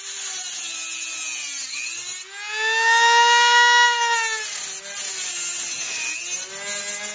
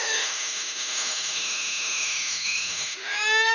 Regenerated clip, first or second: second